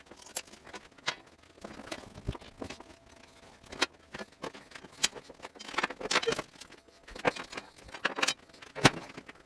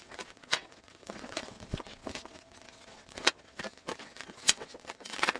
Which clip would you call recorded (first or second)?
first